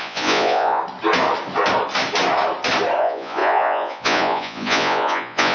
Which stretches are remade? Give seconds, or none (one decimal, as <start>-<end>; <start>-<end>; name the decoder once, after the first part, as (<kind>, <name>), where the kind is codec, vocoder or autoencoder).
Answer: 0.0-0.8 (vocoder, Vocos); 3.0-5.5